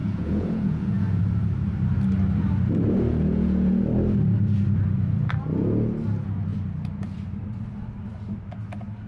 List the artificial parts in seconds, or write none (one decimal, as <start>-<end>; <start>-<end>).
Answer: 0.0-1.2; 3.1-3.8